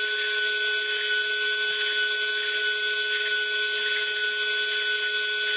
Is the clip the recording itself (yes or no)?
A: yes